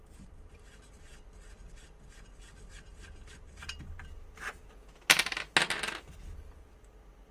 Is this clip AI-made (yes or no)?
no